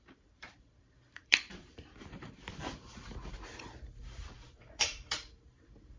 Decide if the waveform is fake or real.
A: fake